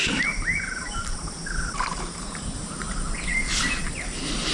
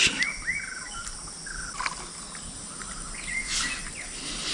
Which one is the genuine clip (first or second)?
second